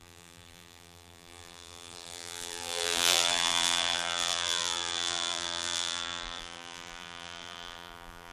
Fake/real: fake